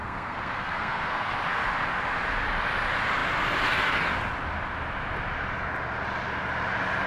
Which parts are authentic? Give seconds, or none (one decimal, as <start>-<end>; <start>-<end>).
1.3-7.1